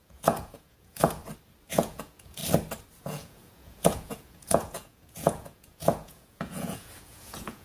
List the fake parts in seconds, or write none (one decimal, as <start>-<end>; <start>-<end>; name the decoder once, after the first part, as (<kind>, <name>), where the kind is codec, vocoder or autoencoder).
0.0-1.2 (vocoder, Vocos); 1.7-2.4; 3.0-7.6